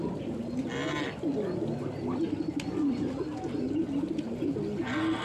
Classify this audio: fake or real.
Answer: real